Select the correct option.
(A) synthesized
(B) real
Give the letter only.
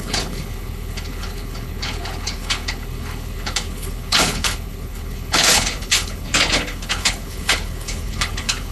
A